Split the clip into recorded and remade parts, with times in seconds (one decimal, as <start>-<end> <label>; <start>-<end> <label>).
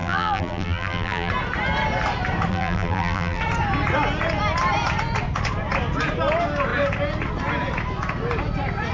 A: 0.0-1.3 remade; 1.3-2.5 recorded; 2.5-3.4 remade; 3.4-8.9 recorded